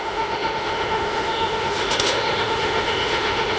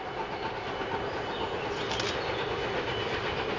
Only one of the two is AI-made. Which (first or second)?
first